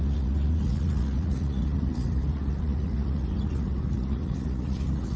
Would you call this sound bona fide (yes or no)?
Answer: no